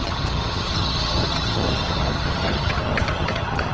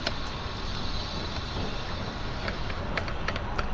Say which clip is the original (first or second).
second